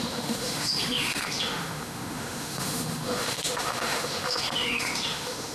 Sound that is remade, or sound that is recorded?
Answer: remade